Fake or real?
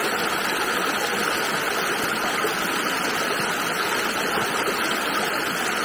real